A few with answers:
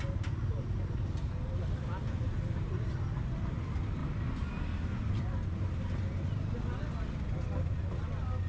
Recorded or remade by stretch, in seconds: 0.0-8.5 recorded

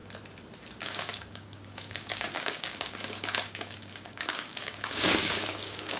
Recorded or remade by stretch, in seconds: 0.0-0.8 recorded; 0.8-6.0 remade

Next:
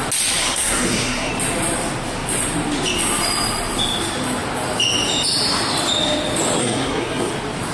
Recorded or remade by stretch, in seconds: 0.0-0.4 recorded; 0.4-1.3 remade; 1.3-6.6 recorded; 6.6-7.3 remade; 7.3-7.7 recorded